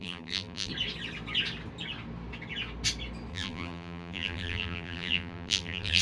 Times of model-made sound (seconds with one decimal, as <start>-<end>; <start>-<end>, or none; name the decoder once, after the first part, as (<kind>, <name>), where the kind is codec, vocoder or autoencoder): 0.0-0.7 (vocoder, BigVGAN v2); 3.3-6.0